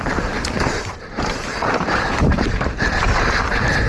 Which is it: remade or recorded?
remade